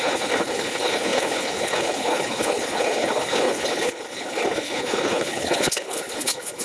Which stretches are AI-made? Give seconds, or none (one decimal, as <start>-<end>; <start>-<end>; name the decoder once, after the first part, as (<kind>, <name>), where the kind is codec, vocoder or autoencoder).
0.0-6.6 (codec, HILCodec)